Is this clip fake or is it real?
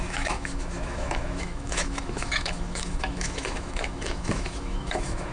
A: fake